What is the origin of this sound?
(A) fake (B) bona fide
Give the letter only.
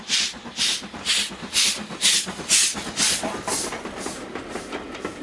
B